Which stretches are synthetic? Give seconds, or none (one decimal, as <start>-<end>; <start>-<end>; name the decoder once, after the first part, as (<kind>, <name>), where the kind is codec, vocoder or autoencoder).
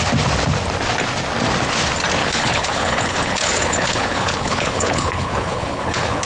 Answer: 2.2-6.3 (codec, HILCodec)